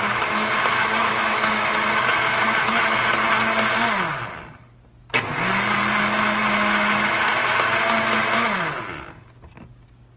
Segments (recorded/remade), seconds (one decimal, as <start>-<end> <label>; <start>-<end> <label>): 0.0-3.2 remade; 3.2-6.5 recorded; 6.5-7.4 remade; 7.4-10.2 recorded